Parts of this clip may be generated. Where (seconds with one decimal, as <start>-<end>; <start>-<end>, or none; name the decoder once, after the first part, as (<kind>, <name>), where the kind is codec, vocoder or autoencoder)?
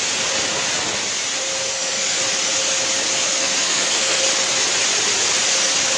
1.7-2.2 (codec, SNAC); 3.3-4.2